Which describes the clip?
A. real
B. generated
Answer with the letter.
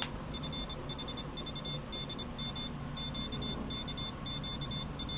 A